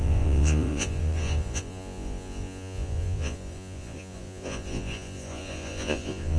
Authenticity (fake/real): fake